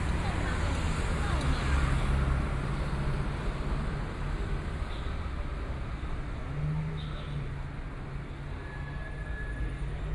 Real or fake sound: real